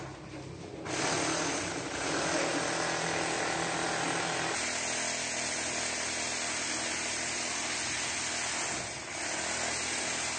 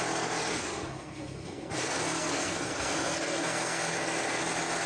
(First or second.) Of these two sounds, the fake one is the second